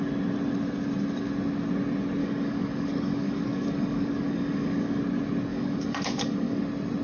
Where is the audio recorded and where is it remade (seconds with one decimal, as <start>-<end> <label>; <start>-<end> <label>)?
0.0-2.2 recorded; 2.2-5.0 remade; 5.0-5.5 recorded; 5.5-6.6 remade; 6.6-7.0 recorded

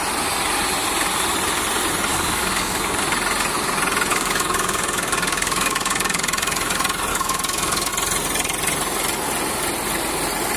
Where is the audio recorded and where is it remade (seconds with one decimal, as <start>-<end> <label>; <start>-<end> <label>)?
0.0-2.1 recorded; 2.1-3.0 remade; 3.0-4.1 recorded; 4.1-6.2 remade; 6.2-7.1 recorded; 7.1-7.9 remade; 7.9-10.6 recorded

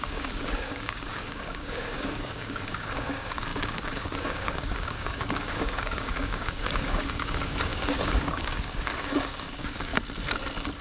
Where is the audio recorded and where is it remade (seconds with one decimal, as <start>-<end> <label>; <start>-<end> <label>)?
0.0-9.9 remade; 9.9-10.8 recorded

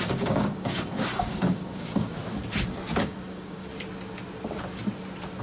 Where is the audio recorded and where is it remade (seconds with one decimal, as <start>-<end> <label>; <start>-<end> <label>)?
0.0-2.2 remade; 2.2-3.0 recorded; 3.0-3.7 remade; 3.7-5.4 recorded

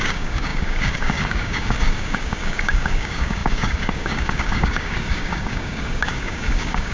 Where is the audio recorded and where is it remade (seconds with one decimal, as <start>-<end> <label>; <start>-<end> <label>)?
0.0-6.9 remade